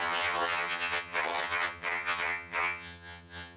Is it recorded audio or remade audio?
remade